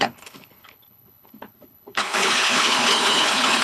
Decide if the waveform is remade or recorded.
remade